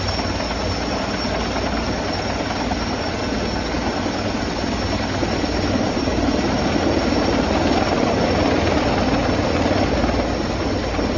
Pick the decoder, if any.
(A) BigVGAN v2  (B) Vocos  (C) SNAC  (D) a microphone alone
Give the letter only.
D